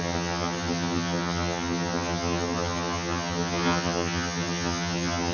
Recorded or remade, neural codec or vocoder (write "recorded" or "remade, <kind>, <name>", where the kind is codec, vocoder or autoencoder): remade, vocoder, HiFi-GAN